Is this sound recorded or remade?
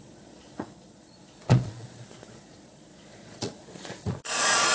remade